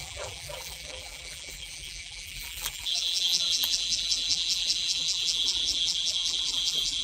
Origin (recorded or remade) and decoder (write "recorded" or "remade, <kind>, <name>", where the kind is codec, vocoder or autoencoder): remade, vocoder, BigVGAN v2